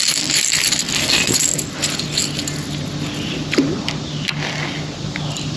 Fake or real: real